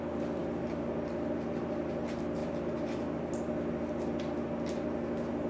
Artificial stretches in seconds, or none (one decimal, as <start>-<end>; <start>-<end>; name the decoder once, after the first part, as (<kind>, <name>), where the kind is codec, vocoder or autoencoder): none